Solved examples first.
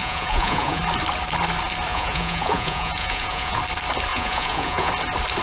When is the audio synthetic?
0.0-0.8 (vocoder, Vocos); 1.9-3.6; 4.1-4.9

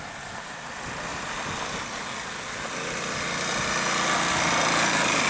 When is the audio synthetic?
none

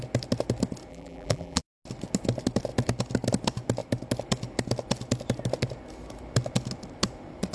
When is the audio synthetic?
0.9-1.6 (vocoder, BigVGAN v2)